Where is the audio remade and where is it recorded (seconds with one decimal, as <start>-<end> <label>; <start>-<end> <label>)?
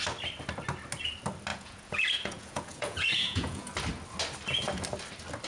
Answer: 0.0-1.5 recorded; 1.5-3.7 remade; 3.7-5.5 recorded